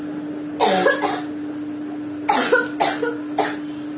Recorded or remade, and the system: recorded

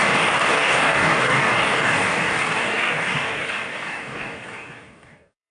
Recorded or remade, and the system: remade, codec, DAC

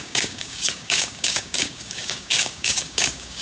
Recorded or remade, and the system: remade, codec, DAC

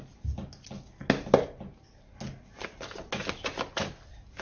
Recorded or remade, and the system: recorded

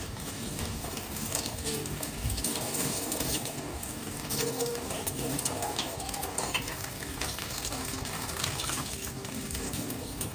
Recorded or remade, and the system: remade, codec, DAC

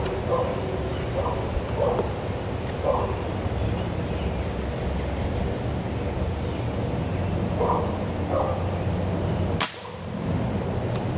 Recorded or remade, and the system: recorded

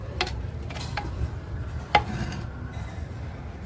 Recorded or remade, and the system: recorded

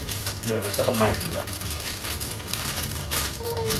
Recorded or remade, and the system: remade, codec, DAC